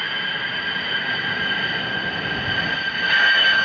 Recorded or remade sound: recorded